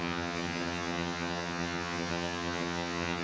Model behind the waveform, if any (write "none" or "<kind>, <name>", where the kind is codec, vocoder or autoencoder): vocoder, HiFi-GAN